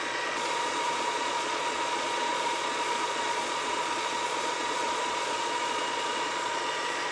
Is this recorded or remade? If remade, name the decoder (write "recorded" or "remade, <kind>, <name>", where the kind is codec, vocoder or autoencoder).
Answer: remade, vocoder, Vocos